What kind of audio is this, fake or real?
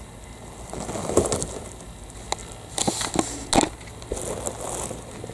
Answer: real